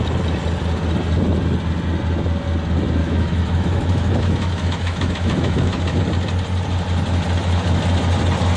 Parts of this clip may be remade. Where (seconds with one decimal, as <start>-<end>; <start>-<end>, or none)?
3.0-6.0